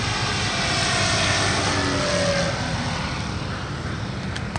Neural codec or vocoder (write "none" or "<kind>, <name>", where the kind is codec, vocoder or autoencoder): none